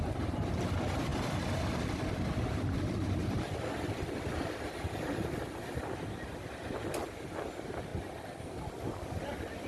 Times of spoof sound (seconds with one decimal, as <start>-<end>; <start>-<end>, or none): 7.9-9.2